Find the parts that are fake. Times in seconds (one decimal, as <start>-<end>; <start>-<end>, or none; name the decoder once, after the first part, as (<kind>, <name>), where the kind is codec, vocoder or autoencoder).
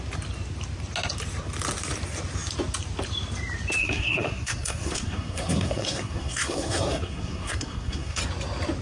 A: 3.8-8.2 (codec, SNAC)